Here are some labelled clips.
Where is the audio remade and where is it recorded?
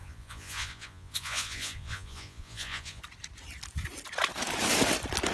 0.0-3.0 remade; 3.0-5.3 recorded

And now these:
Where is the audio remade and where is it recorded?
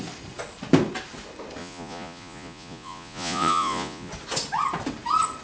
0.0-1.6 recorded; 1.6-4.1 remade; 4.1-5.4 recorded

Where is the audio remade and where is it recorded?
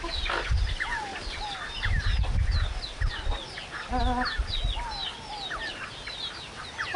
0.0-7.0 recorded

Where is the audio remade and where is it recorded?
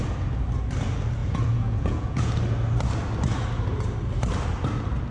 0.0-1.2 recorded; 1.2-2.3 remade; 2.3-5.1 recorded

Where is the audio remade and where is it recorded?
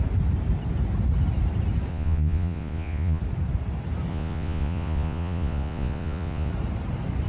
0.0-1.9 recorded; 1.9-3.2 remade; 3.2-4.1 recorded; 4.1-6.5 remade; 6.5-7.3 recorded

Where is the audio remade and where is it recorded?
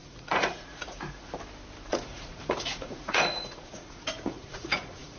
0.0-1.3 remade; 1.3-1.9 recorded; 1.9-5.2 remade